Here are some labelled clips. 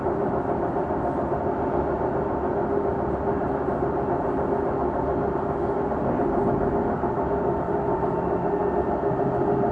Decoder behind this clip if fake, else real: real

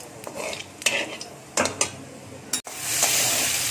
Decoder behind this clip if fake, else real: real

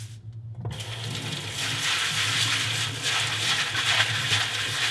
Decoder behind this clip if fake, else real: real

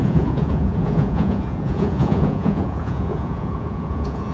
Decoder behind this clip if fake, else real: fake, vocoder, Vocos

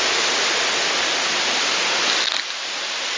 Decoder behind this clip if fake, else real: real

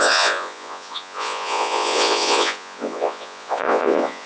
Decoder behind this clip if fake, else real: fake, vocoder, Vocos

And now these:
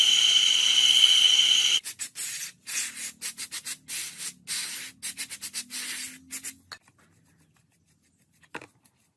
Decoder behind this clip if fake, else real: real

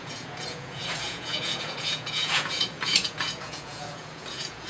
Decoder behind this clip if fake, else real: fake, vocoder, Vocos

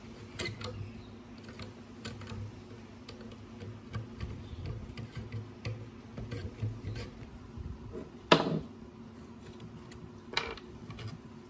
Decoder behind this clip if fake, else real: real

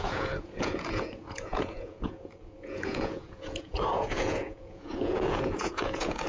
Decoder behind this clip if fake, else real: fake, vocoder, Vocos